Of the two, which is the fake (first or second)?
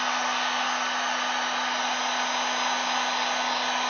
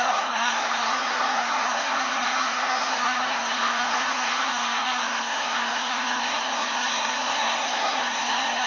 second